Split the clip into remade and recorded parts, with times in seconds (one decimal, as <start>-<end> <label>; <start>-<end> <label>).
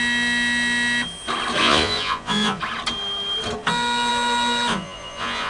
0.0-1.6 recorded; 1.6-2.6 remade; 2.6-4.7 recorded; 4.7-5.5 remade